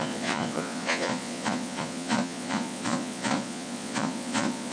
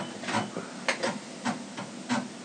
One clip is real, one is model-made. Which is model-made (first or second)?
first